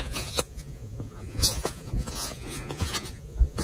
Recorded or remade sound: remade